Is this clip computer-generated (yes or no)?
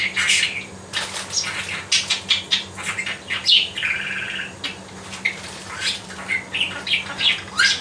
no